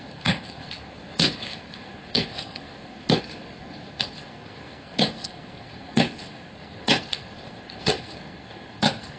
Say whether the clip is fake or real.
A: fake